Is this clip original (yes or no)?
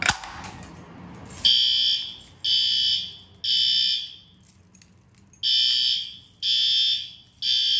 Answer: yes